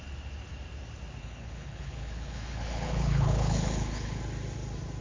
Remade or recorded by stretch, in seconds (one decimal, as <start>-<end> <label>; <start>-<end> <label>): 0.0-1.2 recorded; 1.2-4.2 remade; 4.2-5.0 recorded

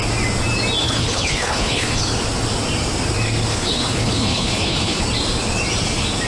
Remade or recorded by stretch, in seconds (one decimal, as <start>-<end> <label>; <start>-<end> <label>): 0.0-0.8 recorded; 0.8-2.0 remade; 2.0-3.5 recorded; 3.5-5.0 remade; 5.0-6.3 recorded

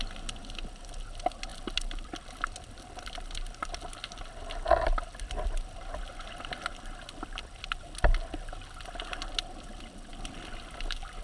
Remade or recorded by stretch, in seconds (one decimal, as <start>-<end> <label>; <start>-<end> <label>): 0.0-11.2 recorded

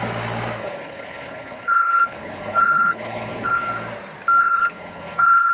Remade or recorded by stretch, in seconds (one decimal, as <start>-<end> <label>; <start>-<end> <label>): 0.0-0.6 recorded; 0.6-3.7 remade; 3.7-4.4 recorded; 4.4-5.5 remade

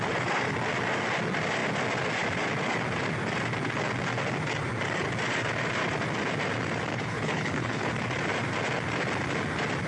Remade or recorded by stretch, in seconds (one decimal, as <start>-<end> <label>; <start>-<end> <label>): 0.0-6.9 recorded; 6.9-7.9 remade; 7.9-9.9 recorded

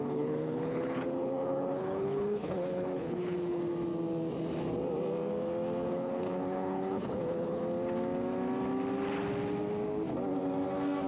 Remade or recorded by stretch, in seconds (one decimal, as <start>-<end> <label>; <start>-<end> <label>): 0.0-3.6 remade; 3.6-5.9 recorded; 5.9-7.6 remade; 7.6-11.1 recorded